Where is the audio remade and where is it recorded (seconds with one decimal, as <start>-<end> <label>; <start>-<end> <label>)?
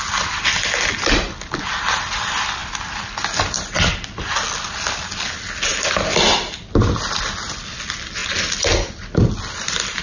0.0-10.0 recorded